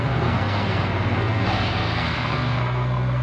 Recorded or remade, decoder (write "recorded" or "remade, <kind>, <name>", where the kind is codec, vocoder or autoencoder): remade, codec, SNAC